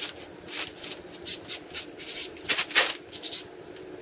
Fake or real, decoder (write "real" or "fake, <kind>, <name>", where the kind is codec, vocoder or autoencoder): real